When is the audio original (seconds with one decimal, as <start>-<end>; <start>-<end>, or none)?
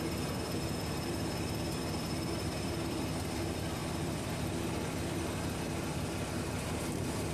none